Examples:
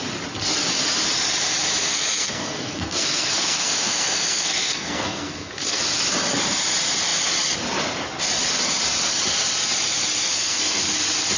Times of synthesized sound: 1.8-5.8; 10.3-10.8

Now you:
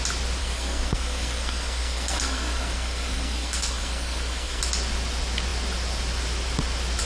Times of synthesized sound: 0.4-4.6